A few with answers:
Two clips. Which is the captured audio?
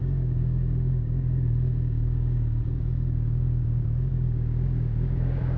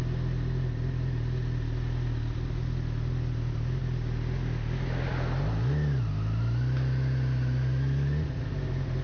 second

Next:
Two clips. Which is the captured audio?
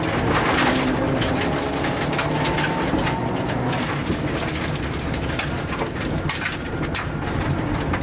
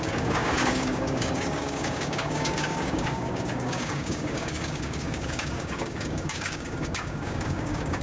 first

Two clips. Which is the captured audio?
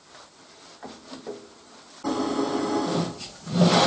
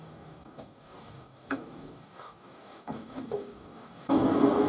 first